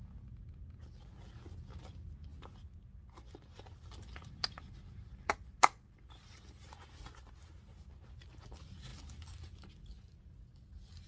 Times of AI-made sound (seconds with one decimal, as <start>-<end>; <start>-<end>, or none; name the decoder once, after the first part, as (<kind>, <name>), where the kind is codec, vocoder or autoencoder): none

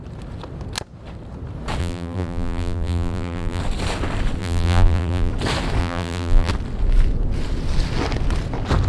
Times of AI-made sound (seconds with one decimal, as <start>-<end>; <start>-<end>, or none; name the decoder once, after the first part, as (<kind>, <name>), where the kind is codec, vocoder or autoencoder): 1.8-3.6 (vocoder, BigVGAN v2); 4.4-5.3; 5.8-6.5

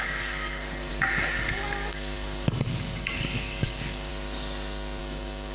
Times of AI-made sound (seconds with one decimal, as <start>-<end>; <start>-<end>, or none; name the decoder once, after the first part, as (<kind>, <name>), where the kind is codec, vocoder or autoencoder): 0.0-4.1 (codec, DAC); 5.0-5.5

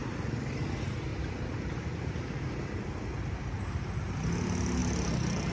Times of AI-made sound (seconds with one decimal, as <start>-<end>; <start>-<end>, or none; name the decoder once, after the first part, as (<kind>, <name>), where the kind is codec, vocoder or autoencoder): none

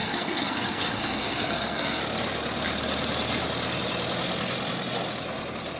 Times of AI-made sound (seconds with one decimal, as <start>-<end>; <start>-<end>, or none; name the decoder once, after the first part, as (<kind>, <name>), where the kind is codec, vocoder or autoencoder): 0.0-2.0 (codec, SNAC)